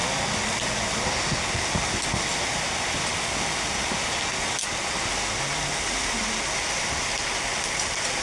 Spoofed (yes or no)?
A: no